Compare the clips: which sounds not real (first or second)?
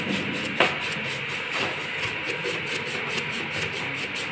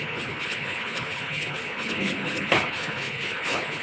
second